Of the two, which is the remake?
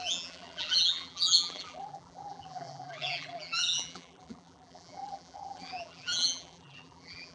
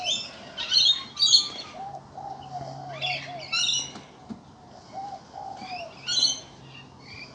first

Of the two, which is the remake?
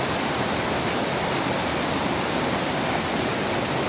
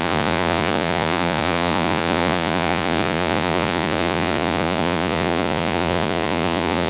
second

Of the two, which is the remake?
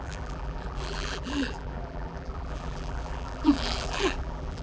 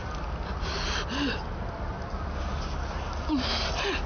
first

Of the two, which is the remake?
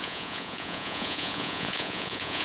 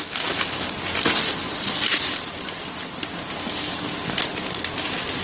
first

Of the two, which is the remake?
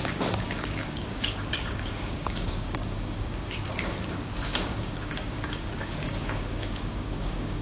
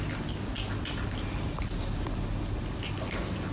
first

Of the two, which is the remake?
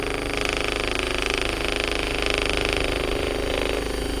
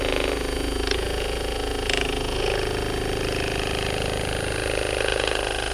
second